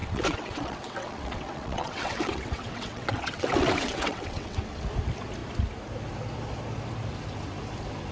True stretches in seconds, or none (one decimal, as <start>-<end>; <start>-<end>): 4.8-8.1